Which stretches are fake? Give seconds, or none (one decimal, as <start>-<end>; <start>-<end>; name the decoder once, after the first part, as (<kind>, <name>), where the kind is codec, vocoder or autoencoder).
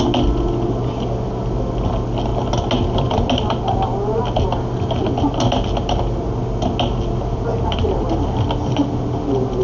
none